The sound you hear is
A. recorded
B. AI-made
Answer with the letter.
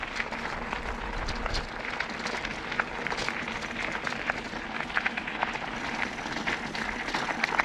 A